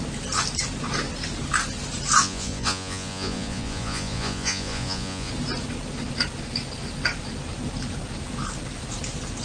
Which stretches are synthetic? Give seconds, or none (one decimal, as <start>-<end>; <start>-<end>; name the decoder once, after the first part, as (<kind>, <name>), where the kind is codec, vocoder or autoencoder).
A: 2.2-5.3 (vocoder, Vocos)